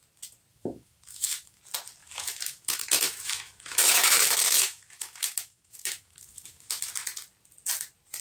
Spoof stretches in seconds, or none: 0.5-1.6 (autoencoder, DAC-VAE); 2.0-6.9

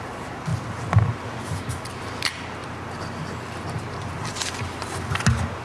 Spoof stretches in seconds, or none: none

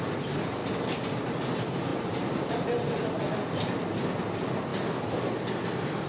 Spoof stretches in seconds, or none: none

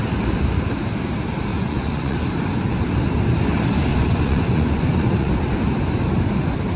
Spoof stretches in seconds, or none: 1.5-2.2 (vocoder, Vocos); 3.9-5.3

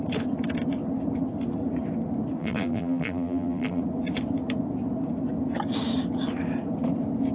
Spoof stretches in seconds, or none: 2.4-3.8 (vocoder, BigVGAN v2)

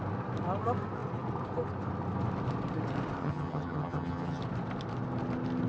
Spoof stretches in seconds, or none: 3.2-4.4 (vocoder, HiFi-GAN)

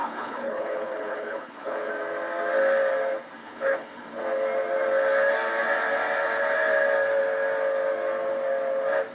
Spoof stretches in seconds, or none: 0.0-1.9 (codec, HILCodec); 3.4-4.2

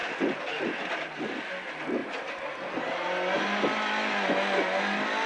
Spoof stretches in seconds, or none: none